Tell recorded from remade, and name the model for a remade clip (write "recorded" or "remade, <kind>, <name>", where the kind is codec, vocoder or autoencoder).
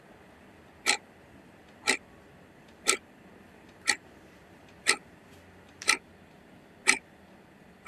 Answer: remade, vocoder, BigVGAN v2